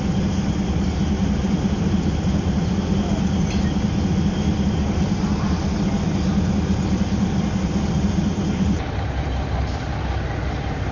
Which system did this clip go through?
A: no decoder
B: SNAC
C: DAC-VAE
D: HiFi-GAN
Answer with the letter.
A